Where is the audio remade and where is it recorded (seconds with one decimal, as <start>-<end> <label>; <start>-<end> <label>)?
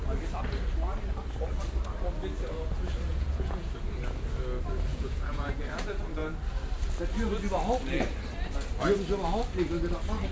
0.0-3.1 recorded; 3.1-3.7 remade; 3.7-4.9 recorded; 4.9-5.6 remade; 5.6-10.3 recorded